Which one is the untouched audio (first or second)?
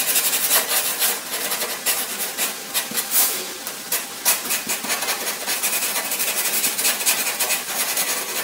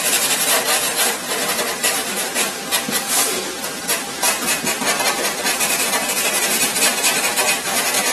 first